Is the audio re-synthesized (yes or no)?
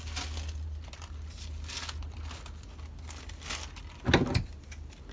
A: no